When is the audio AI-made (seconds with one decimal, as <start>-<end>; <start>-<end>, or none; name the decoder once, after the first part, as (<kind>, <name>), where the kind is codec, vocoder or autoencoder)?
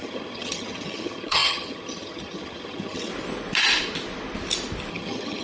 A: 0.0-3.1 (vocoder, HiFi-GAN); 4.9-5.4